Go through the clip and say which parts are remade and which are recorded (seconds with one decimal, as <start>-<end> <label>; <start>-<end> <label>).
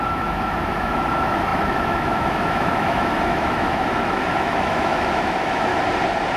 0.0-5.7 remade; 5.7-6.4 recorded